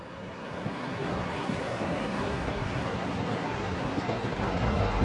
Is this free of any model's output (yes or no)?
no